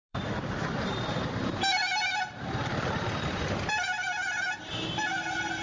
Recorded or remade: remade